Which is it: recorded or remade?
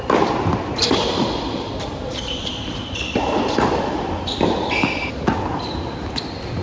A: remade